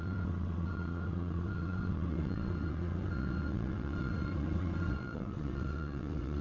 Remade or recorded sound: remade